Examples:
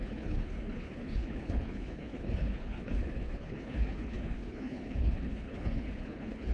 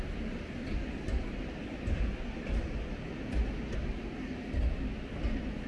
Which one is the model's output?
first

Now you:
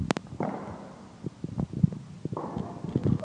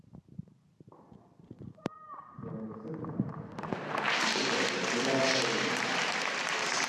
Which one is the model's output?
second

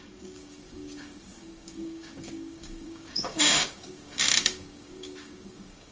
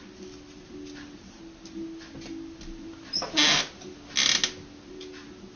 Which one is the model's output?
first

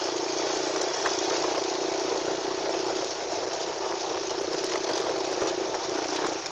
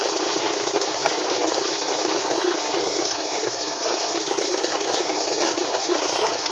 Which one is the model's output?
second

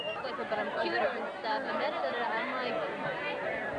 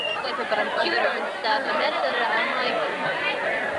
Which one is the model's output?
second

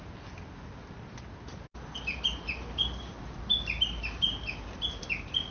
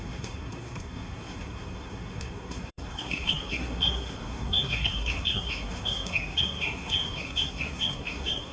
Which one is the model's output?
second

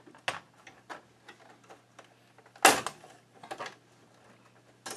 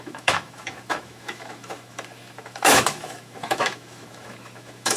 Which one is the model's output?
second